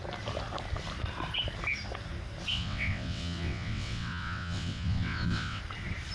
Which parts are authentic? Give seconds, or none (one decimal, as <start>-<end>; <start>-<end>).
0.0-2.5; 5.6-6.1